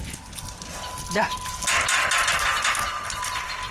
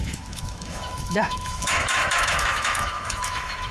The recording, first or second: first